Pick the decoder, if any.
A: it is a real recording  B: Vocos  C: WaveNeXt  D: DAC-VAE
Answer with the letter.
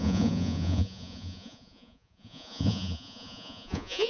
B